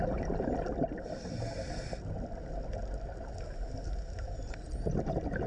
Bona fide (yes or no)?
yes